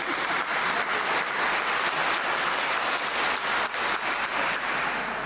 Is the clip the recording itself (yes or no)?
yes